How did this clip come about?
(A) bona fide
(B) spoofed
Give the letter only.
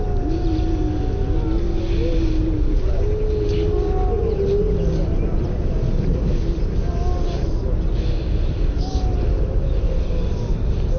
A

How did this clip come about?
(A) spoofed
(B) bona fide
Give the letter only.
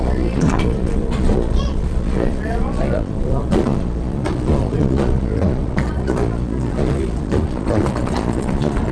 A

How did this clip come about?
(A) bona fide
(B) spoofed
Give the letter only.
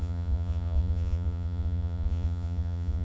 B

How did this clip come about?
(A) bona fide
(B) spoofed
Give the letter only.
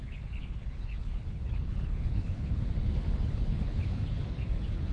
B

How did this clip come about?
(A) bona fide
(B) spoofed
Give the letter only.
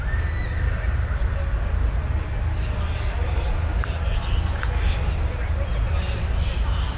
A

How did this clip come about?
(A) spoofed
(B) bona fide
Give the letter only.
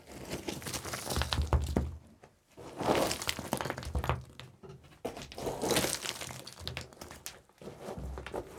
B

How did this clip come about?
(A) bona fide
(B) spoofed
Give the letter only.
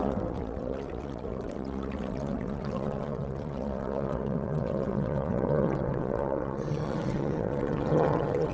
B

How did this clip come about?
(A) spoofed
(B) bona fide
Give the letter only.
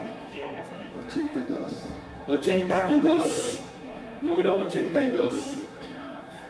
A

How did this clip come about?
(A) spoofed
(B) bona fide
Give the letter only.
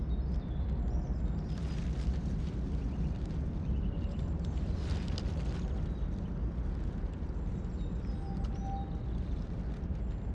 B